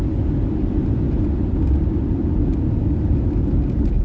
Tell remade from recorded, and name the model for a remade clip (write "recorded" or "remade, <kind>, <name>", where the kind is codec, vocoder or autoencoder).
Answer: recorded